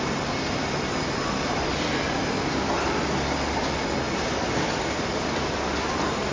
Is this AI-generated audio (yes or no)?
no